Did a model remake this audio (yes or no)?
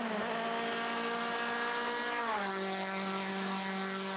no